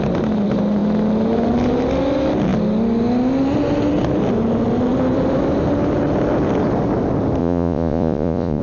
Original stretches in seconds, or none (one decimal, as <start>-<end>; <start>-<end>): 0.0-7.4